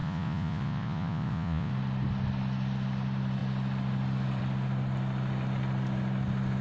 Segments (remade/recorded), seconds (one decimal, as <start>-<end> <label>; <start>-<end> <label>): 0.0-1.7 remade; 1.7-6.6 recorded